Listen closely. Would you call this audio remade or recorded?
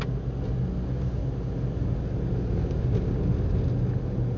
recorded